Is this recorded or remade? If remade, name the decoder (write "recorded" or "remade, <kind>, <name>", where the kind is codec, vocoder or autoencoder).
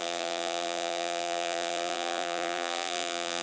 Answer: remade, vocoder, BigVGAN v2